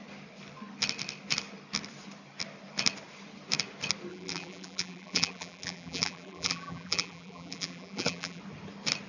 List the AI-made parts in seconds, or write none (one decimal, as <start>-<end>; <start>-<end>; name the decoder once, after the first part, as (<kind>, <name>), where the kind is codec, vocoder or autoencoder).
4.1-8.4 (vocoder, BigVGAN v2)